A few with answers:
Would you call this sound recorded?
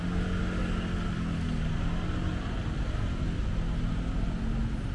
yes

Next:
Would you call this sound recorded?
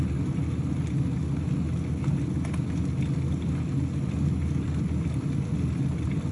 yes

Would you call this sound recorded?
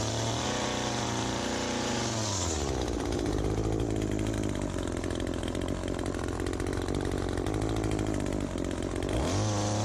yes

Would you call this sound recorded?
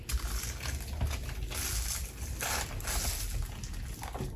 yes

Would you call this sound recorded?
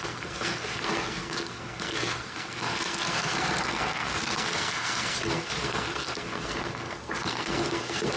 no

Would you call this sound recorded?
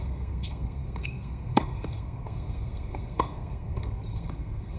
no